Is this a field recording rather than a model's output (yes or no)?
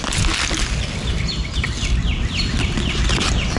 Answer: yes